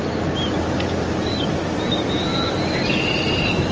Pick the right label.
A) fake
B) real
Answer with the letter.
B